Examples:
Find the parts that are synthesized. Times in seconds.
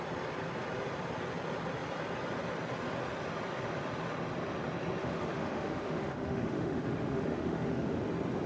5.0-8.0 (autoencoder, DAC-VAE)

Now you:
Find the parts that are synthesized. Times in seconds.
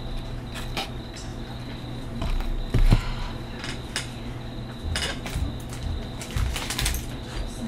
none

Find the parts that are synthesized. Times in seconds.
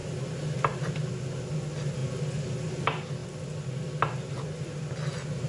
none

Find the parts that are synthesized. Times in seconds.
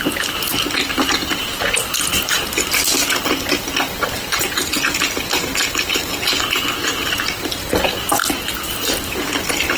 none